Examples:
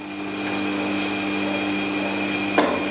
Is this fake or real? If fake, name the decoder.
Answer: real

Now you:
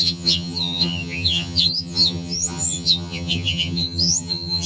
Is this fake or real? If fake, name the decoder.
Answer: fake, vocoder, HiFi-GAN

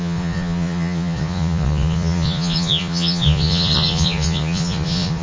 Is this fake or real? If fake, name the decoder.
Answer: fake, vocoder, Vocos